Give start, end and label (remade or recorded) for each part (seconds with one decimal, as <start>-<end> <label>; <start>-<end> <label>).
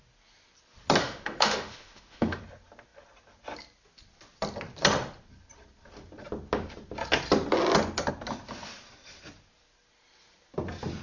0.0-1.0 recorded; 1.0-2.4 remade; 2.4-11.0 recorded